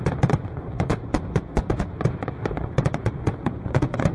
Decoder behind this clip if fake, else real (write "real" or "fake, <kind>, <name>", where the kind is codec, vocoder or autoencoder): fake, vocoder, Vocos